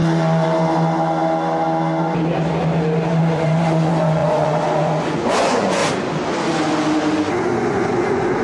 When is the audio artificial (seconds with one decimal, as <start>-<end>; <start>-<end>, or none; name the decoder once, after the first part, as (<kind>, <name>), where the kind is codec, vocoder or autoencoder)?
3.2-5.8 (vocoder, Vocos); 7.3-8.4